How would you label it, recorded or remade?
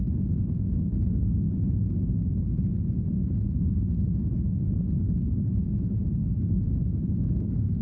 remade